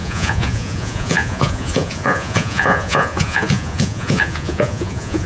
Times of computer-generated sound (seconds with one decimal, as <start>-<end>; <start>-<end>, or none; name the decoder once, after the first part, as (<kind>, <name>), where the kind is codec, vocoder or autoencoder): 0.0-5.3 (vocoder, Vocos)